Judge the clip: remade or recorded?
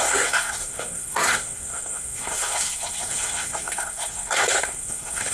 remade